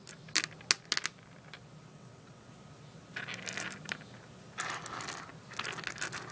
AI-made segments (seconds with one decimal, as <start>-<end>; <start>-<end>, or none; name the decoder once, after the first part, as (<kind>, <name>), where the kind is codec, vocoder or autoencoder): 1.9-2.5 (vocoder, WaveNeXt)